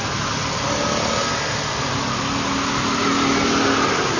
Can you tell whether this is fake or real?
real